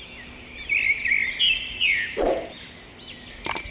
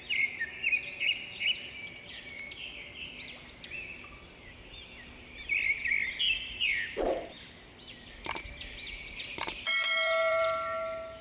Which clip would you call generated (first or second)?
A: second